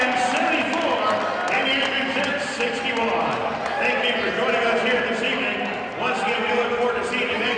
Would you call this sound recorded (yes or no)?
yes